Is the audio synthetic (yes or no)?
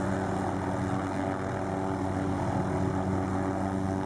no